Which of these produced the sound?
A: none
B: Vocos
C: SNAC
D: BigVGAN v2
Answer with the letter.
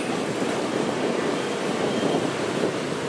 A